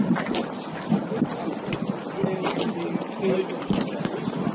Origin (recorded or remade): recorded